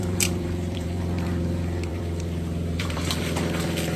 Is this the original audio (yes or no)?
no